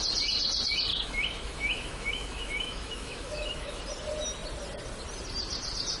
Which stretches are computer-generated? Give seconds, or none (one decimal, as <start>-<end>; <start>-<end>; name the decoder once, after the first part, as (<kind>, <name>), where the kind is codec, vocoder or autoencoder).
0.9-3.8 (autoencoder, DAC-VAE)